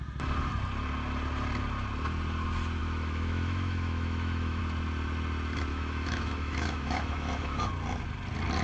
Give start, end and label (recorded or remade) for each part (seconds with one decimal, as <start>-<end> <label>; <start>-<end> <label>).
0.0-2.8 recorded; 2.8-4.6 remade; 4.6-5.7 recorded; 5.7-7.7 remade; 7.7-8.6 recorded